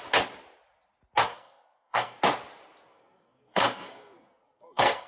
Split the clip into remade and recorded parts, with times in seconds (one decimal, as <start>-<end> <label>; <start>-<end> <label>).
0.0-1.3 recorded; 1.3-2.2 remade; 2.2-2.9 recorded; 2.9-5.1 remade